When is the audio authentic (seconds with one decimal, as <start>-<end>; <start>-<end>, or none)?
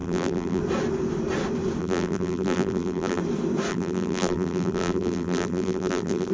0.6-1.8; 3.2-3.7